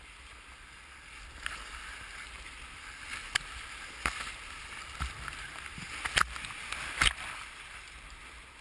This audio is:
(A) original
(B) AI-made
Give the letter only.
A